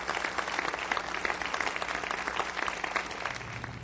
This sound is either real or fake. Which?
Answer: real